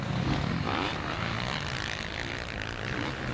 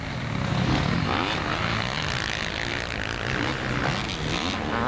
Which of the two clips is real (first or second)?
second